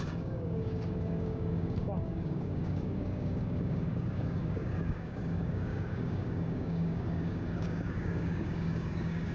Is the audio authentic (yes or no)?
no